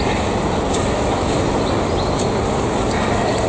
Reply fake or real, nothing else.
real